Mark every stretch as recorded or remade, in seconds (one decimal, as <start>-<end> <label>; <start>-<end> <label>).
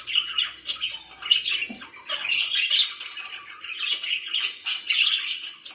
0.0-5.7 recorded